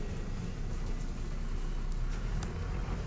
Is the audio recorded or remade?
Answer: recorded